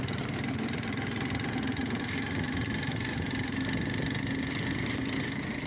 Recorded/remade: recorded